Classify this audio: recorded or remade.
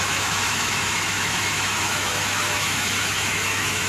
remade